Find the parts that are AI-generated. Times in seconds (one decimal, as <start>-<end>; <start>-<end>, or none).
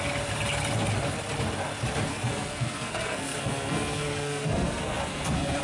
2.1-5.6